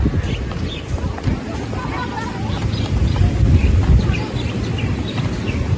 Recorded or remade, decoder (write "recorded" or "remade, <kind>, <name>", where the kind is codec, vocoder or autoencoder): recorded